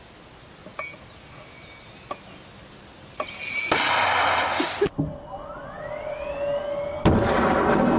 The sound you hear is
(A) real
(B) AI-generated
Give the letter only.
A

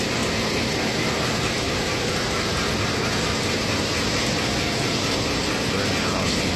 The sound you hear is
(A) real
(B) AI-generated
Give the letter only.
A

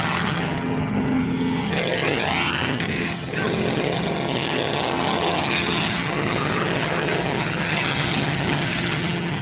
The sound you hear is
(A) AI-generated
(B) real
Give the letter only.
A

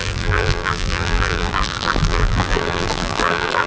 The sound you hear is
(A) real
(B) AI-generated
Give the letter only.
B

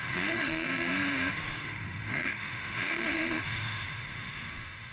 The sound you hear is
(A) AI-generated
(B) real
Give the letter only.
A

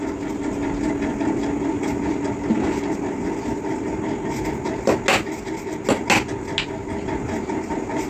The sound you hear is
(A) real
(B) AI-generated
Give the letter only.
A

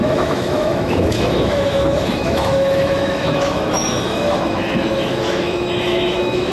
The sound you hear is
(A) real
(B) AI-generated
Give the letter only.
B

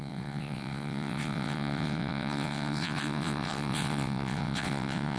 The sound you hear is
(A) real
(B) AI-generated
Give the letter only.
B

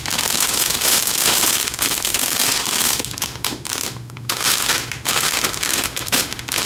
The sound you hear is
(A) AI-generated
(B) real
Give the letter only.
A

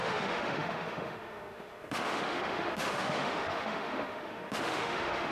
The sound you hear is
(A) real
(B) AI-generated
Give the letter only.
B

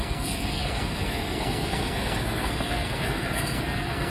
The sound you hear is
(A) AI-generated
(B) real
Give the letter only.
A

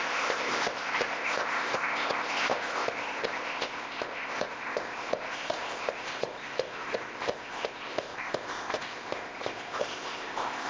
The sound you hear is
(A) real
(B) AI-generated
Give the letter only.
B